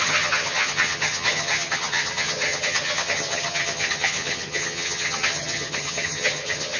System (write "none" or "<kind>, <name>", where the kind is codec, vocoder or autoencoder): vocoder, HiFi-GAN